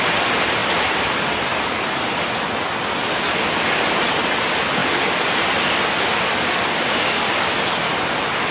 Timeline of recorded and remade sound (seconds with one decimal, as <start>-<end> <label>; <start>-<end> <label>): 0.0-0.6 recorded; 0.6-1.1 remade; 1.1-1.5 recorded; 1.5-2.2 remade; 2.2-8.5 recorded